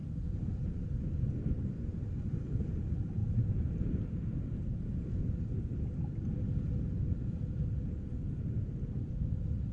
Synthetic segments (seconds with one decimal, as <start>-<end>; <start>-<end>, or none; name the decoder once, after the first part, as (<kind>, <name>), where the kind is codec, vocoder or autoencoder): 0.0-0.8 (vocoder, BigVGAN v2)